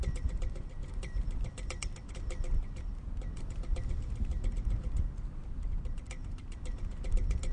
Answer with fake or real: real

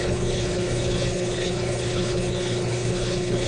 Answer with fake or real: fake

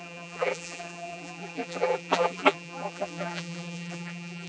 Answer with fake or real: fake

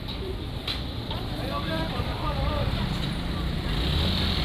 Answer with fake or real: fake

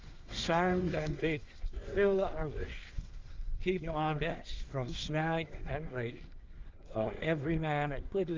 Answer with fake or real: fake